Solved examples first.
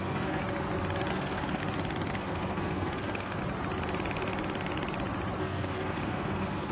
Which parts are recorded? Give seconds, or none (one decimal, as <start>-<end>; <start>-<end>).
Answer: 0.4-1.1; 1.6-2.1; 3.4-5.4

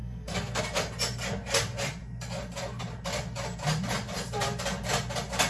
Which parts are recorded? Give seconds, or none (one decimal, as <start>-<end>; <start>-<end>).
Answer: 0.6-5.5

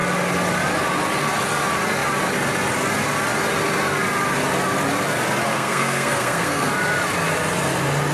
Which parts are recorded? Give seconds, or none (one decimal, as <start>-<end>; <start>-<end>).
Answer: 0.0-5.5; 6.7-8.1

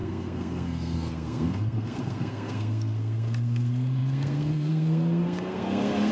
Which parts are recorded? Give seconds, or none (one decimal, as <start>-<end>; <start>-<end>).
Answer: none

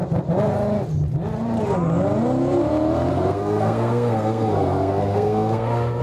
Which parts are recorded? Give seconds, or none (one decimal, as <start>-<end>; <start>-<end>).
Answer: 0.0-3.1

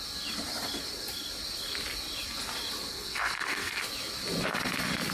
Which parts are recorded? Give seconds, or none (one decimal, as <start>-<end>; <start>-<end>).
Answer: 0.0-2.9; 3.8-5.1

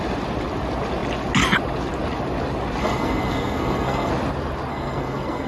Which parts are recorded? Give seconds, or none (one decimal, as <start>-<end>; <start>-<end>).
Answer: 0.0-2.8; 4.1-4.7

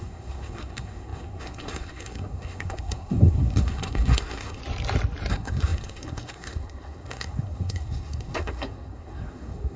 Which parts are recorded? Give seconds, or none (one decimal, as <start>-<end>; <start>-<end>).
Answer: 4.6-5.3